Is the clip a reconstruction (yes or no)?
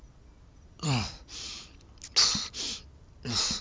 no